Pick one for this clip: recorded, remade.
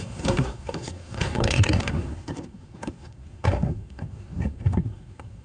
remade